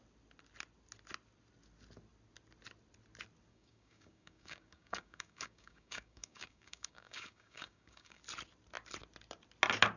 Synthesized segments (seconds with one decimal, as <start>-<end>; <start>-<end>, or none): 3.5-8.2